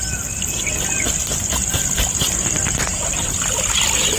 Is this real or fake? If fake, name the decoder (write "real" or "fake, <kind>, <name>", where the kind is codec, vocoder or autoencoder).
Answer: fake, vocoder, BigVGAN v2